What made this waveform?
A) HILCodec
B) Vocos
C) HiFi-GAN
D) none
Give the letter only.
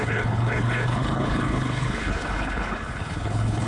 A